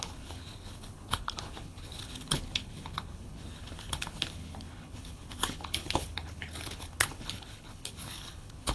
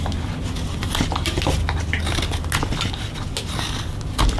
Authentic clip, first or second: second